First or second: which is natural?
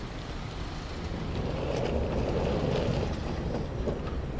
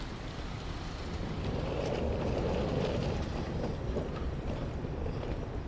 first